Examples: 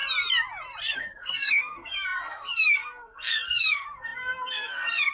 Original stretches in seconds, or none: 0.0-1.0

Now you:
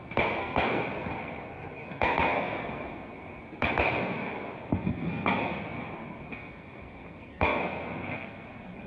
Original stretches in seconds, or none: none

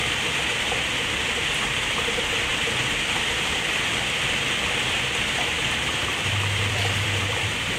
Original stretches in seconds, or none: 0.0-1.2

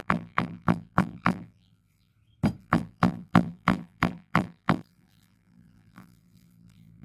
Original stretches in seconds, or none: 2.1-2.6

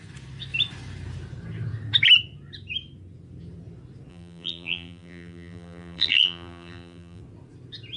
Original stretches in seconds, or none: 0.0-4.1; 7.2-8.0

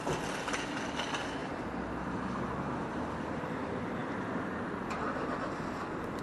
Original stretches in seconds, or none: 0.0-4.0; 4.7-6.2

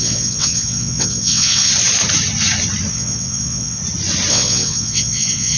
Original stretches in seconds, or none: 1.7-2.9; 3.8-4.3

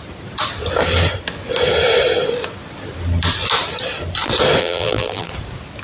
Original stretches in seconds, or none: 0.0-4.6; 5.3-5.8